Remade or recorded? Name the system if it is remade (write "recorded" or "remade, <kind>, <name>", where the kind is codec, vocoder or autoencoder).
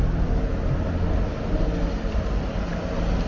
recorded